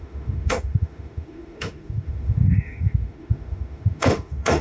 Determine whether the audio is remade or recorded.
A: remade